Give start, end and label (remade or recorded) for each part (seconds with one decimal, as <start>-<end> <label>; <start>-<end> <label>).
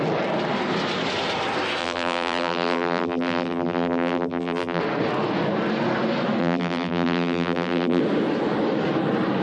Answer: 0.0-1.8 recorded; 1.8-4.8 remade; 4.8-6.4 recorded; 6.4-8.0 remade; 8.0-9.4 recorded